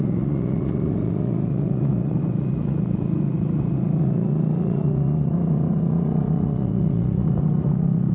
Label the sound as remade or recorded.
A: remade